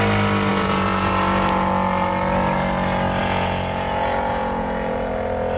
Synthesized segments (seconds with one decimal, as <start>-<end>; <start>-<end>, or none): 0.5-1.1; 3.2-5.1